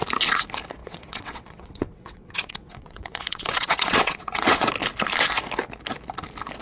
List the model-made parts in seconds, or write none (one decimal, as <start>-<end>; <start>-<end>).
0.8-4.7